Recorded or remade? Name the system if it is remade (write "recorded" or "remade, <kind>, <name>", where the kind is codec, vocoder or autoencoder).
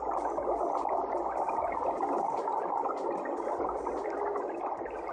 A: recorded